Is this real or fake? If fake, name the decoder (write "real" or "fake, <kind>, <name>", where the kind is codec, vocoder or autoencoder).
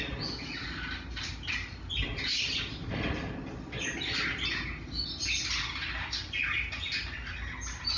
real